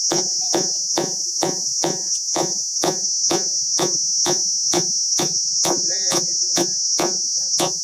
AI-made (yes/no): yes